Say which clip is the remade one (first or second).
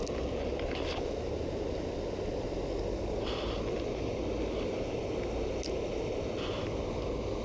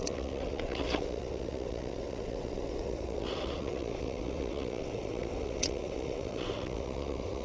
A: second